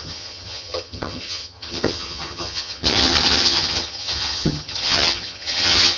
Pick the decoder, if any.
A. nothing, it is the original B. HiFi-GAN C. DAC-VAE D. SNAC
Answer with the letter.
B